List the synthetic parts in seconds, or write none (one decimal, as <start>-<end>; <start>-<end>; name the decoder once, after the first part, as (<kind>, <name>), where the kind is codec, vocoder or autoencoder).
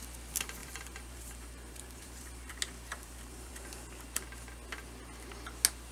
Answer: 0.6-2.5 (vocoder, BigVGAN v2); 2.9-3.5